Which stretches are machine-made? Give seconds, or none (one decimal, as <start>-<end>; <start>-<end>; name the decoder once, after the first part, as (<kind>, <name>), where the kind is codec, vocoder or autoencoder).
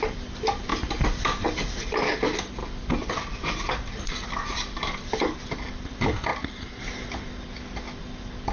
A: none